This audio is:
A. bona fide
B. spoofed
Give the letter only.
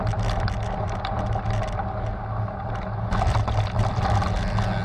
A